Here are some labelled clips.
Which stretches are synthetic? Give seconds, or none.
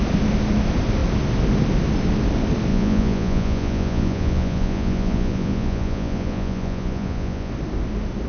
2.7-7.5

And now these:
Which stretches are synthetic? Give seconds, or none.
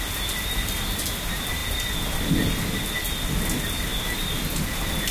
none